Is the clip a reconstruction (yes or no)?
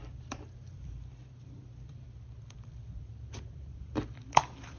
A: yes